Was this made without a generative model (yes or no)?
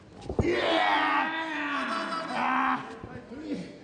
yes